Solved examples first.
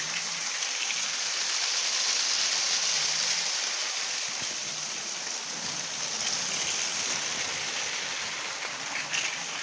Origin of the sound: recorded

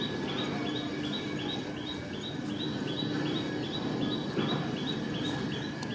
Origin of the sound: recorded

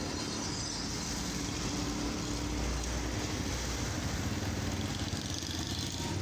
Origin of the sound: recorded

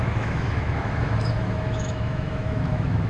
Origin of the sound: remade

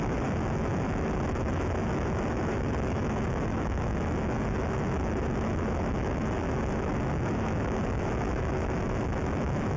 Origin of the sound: remade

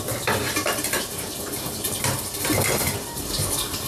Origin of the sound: recorded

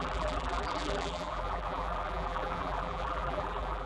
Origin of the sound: remade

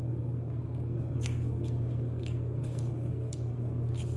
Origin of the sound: remade